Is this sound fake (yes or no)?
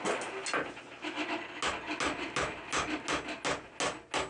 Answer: no